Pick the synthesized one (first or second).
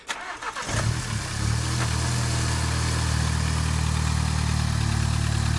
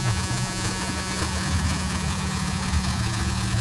second